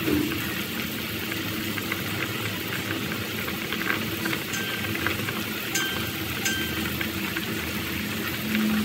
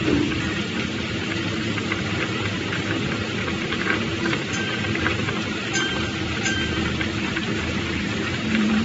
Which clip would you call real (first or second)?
first